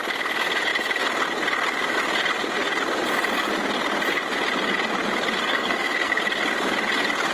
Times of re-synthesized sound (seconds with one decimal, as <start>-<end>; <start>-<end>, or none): 5.5-6.2